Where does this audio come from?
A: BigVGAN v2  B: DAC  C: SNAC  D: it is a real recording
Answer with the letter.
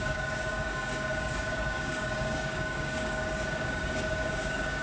B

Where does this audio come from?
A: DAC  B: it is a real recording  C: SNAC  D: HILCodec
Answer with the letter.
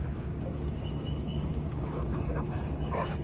A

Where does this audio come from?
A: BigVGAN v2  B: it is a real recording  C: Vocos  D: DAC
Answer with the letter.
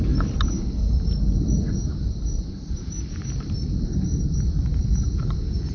B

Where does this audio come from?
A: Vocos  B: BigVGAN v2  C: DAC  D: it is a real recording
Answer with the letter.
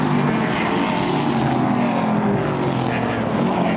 D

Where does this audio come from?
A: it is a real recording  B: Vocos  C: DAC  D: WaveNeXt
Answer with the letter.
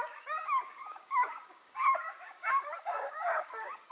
C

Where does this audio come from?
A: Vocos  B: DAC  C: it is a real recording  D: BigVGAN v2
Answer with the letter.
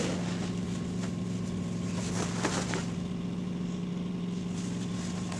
C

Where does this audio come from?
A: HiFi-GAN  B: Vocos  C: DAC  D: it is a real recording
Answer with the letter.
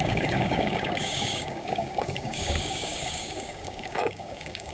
C